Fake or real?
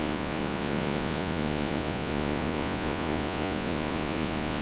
fake